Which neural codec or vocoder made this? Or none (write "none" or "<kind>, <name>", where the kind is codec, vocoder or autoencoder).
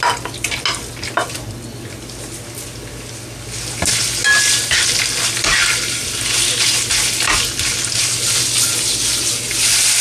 none